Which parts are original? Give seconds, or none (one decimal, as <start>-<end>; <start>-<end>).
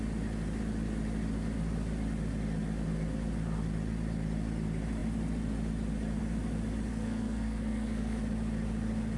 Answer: 0.0-6.9; 8.2-9.2